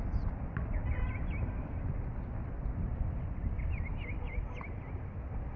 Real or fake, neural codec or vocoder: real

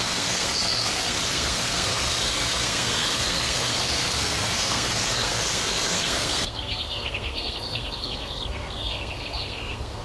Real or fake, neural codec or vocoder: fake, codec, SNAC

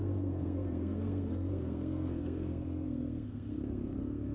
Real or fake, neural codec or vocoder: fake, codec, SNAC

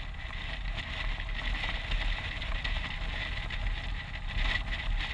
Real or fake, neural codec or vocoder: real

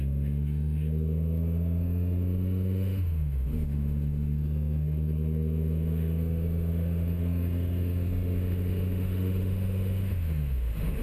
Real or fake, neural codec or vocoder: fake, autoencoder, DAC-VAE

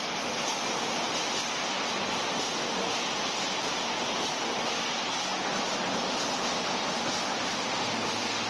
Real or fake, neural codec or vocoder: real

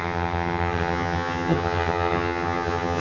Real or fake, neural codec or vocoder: fake, vocoder, HiFi-GAN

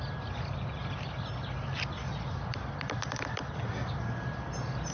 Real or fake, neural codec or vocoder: real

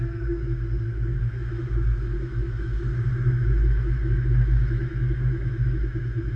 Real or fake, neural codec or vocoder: fake, autoencoder, DAC-VAE